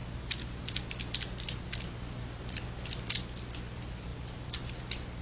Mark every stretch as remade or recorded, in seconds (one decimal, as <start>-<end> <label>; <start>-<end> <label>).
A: 0.0-5.2 recorded